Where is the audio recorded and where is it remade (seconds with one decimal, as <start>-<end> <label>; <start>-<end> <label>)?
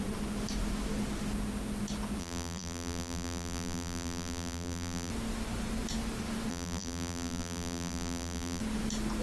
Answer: 0.0-2.2 recorded; 2.2-5.1 remade; 5.1-6.5 recorded; 6.5-8.6 remade; 8.6-9.2 recorded